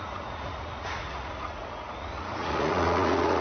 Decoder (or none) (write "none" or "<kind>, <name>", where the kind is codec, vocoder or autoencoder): vocoder, Vocos